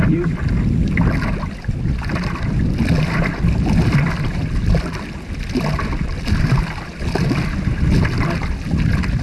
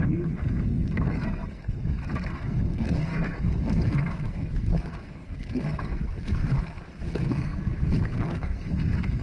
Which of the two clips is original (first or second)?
first